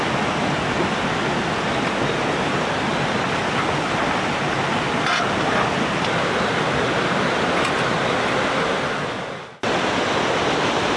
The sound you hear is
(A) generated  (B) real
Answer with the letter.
B